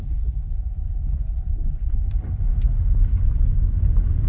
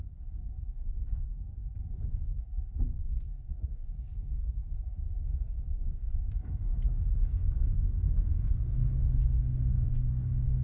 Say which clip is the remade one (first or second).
second